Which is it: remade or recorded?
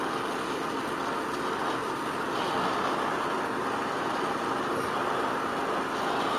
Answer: recorded